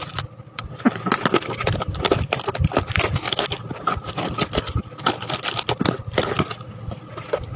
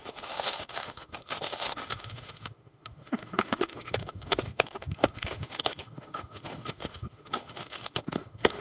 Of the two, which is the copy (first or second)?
second